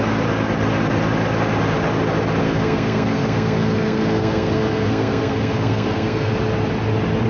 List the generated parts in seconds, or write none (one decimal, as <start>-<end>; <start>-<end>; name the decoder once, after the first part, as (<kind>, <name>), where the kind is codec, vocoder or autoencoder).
2.4-6.3 (codec, SNAC)